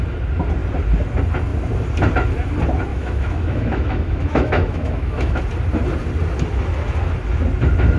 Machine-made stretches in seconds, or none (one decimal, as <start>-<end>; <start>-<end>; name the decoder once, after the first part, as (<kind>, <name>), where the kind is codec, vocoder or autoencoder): 2.9-5.4 (autoencoder, DAC-VAE)